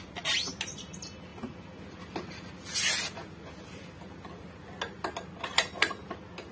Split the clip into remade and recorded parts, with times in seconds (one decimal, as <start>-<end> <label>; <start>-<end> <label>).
0.0-6.5 recorded